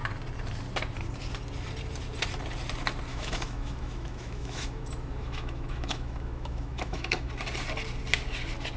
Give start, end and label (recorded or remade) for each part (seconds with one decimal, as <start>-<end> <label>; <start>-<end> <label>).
0.0-3.1 recorded; 3.1-7.3 remade; 7.3-8.8 recorded